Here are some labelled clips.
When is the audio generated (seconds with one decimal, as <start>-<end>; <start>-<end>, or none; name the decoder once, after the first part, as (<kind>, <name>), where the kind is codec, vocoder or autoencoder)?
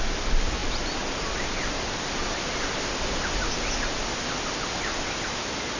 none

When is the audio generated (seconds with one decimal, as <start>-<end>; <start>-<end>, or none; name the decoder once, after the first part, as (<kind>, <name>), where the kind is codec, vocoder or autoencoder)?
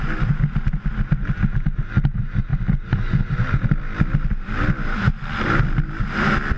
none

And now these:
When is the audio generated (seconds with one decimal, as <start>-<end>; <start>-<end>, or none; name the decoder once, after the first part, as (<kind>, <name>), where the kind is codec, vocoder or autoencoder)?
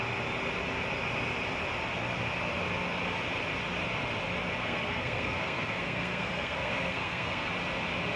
4.6-7.5 (codec, SNAC)